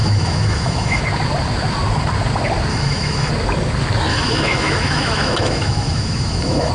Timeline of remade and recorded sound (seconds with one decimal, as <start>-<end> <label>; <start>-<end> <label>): 0.0-1.0 remade; 1.0-2.7 recorded; 2.7-3.3 remade; 3.3-4.1 recorded; 4.1-6.7 remade